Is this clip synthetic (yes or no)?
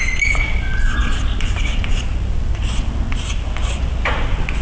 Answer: no